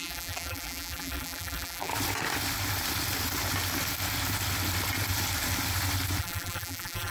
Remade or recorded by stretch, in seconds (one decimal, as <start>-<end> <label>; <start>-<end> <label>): 0.0-1.9 remade; 1.9-6.2 recorded; 6.2-7.1 remade